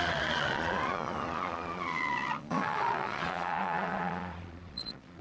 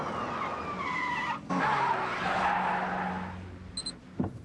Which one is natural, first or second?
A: second